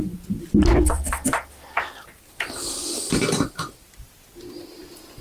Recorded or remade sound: recorded